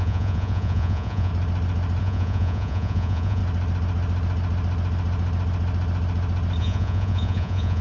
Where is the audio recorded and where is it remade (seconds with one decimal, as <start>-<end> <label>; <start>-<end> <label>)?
0.0-1.3 remade; 1.3-2.0 recorded; 2.0-3.4 remade; 3.4-6.6 recorded; 6.6-7.8 remade